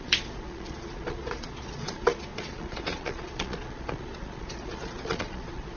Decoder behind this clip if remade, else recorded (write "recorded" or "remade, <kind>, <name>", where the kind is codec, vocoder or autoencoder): remade, vocoder, Vocos